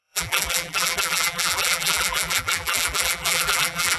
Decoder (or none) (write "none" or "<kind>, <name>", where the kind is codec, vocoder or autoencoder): vocoder, BigVGAN v2